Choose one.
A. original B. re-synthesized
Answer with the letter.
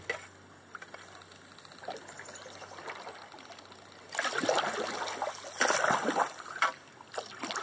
A